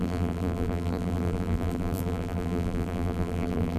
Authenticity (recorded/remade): remade